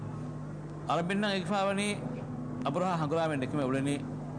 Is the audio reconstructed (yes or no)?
no